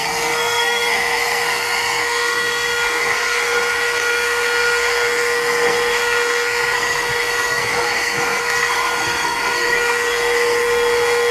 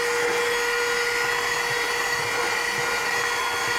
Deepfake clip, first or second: first